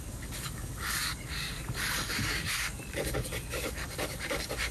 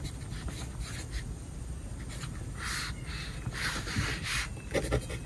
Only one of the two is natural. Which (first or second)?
second